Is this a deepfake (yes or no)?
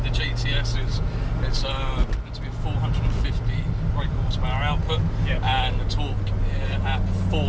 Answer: no